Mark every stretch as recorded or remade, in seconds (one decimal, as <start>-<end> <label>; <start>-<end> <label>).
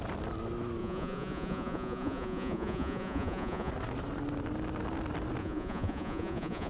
0.0-0.8 recorded; 0.8-3.7 remade; 3.7-5.4 recorded; 5.4-6.7 remade